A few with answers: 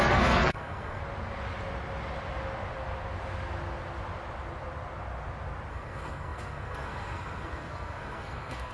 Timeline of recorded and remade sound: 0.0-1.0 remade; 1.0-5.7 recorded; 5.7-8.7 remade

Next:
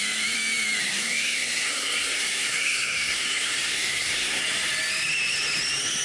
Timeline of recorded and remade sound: 0.0-0.8 recorded; 0.8-4.4 remade; 4.4-6.0 recorded